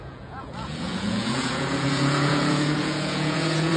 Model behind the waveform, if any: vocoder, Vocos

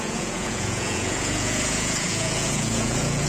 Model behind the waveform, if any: vocoder, Vocos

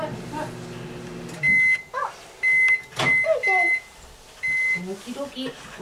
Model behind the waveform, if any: none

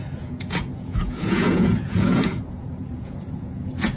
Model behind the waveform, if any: vocoder, Vocos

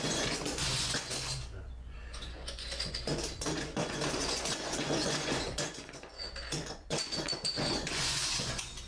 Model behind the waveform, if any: vocoder, Vocos